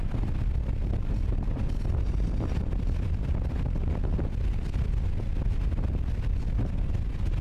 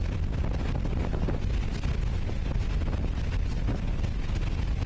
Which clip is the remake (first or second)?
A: first